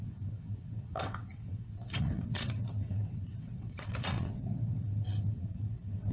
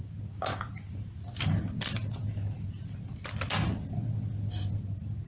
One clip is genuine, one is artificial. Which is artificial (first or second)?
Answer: first